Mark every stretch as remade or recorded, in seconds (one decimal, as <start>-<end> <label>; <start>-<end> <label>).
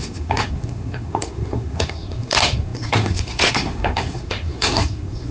0.0-5.3 remade